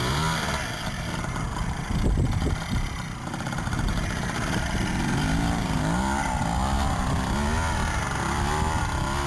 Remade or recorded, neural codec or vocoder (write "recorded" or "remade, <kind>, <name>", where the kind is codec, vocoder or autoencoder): recorded